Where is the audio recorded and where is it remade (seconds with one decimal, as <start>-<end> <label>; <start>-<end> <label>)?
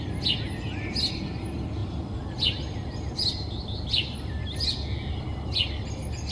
0.0-6.3 recorded